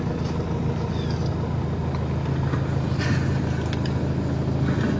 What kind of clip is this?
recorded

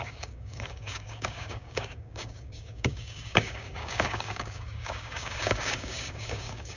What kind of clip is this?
remade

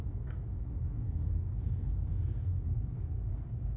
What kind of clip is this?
remade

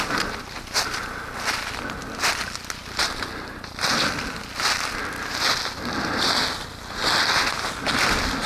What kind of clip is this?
recorded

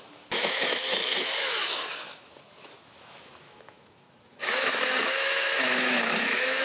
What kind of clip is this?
remade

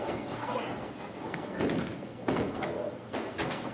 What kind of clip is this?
remade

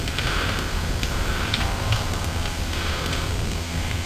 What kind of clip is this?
remade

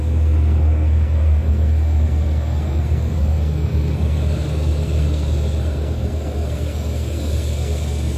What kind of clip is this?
remade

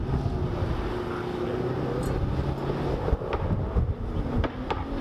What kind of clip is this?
recorded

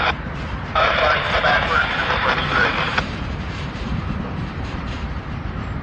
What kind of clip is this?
remade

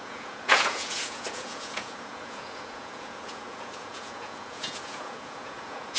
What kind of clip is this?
remade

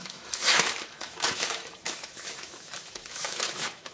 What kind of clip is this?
remade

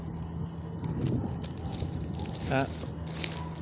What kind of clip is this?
recorded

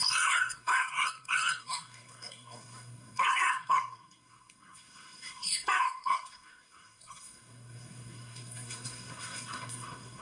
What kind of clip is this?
remade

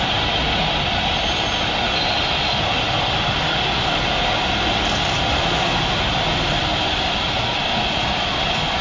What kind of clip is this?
recorded